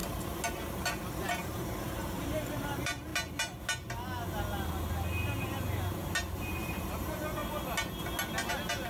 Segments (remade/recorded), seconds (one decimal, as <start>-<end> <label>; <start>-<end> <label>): 0.0-0.9 recorded; 0.9-3.1 remade; 3.1-6.6 recorded; 6.6-7.4 remade; 7.4-8.5 recorded; 8.5-8.9 remade